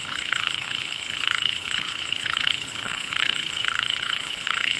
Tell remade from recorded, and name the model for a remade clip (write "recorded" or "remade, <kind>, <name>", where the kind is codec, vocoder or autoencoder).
remade, codec, HILCodec